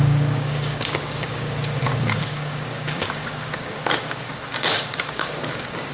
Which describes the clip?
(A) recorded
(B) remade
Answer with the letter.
B